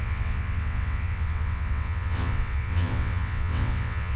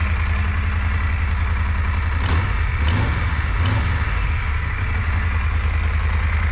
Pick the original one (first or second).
second